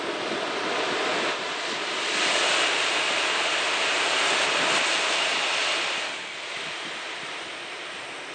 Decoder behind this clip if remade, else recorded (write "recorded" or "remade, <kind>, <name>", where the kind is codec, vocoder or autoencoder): remade, vocoder, BigVGAN v2